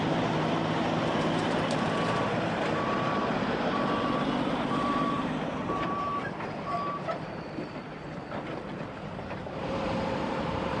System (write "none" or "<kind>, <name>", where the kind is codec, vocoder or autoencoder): vocoder, BigVGAN v2